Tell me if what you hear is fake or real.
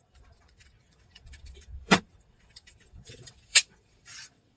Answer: fake